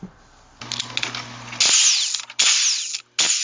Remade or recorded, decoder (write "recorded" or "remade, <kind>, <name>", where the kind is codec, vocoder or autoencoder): recorded